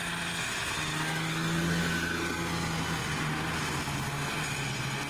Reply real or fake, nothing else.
real